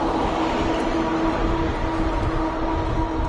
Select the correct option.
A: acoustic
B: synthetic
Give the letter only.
A